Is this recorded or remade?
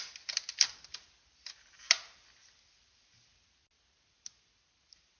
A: recorded